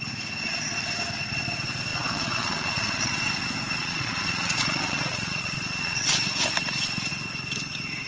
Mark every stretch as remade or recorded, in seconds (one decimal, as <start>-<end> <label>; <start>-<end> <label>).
0.0-1.9 recorded; 1.9-3.1 remade; 3.1-3.8 recorded; 3.8-6.2 remade; 6.2-8.1 recorded